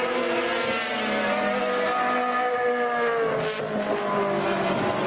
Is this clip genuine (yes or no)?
yes